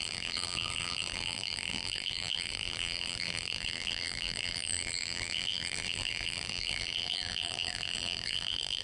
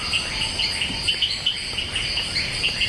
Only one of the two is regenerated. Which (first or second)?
first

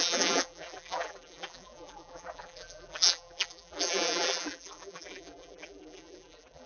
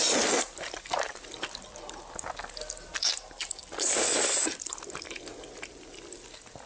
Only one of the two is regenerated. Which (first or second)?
first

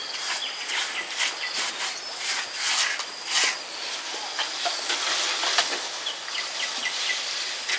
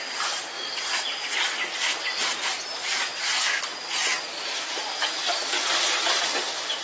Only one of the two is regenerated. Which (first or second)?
second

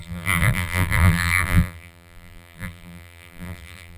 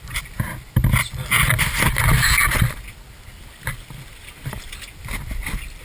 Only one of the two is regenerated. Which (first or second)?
first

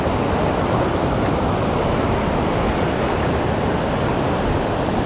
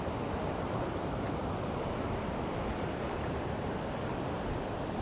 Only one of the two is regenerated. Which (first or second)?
second